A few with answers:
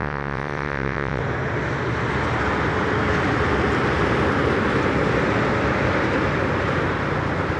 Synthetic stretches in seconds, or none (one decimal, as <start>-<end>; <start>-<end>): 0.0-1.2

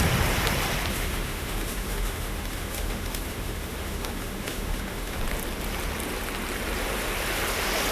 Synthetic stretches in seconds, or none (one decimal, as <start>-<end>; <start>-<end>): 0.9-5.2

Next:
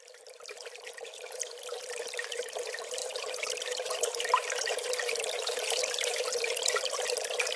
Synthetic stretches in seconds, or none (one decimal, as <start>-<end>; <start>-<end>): 0.0-7.6

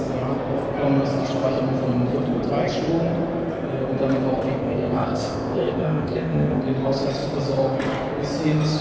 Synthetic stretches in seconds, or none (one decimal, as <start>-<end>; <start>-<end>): 4.6-6.6